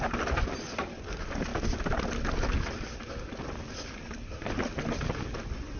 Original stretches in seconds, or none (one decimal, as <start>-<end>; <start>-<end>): 0.0-5.8